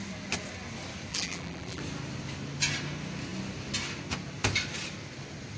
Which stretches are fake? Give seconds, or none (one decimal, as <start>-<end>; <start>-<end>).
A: 1.1-1.8